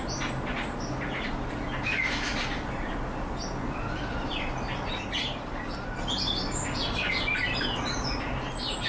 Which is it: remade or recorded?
recorded